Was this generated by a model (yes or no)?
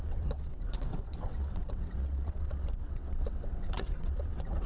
yes